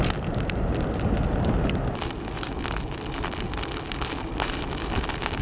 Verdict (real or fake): real